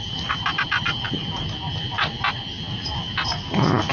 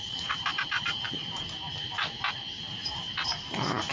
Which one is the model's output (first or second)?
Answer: second